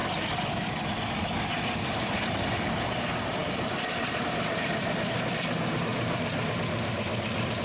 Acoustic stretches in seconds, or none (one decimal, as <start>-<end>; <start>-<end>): 0.5-3.4; 5.5-5.9; 6.6-7.6